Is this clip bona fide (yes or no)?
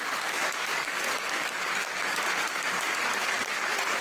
no